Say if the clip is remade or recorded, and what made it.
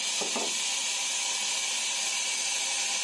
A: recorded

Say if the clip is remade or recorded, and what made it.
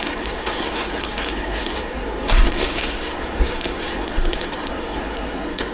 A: remade, codec, SNAC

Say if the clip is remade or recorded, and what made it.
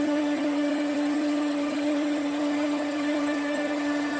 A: remade, vocoder, HiFi-GAN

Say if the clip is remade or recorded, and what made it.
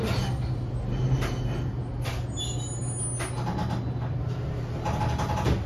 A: recorded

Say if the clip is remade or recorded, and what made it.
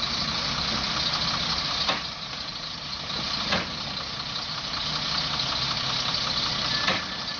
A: recorded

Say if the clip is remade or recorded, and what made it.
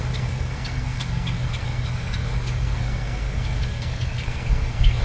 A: remade, codec, SNAC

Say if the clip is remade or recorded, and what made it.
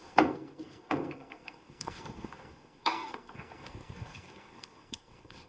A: remade, codec, SNAC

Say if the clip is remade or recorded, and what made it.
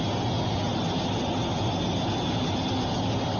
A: recorded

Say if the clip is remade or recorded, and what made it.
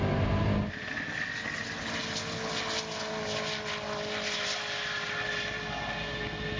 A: recorded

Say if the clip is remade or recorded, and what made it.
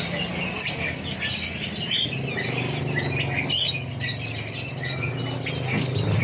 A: recorded